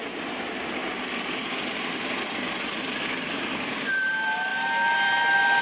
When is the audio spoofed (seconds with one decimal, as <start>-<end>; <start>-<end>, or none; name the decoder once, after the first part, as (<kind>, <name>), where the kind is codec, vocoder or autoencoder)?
none